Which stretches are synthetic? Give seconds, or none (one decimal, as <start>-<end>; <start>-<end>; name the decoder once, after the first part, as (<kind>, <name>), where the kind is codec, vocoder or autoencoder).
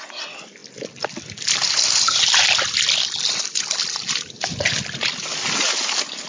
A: none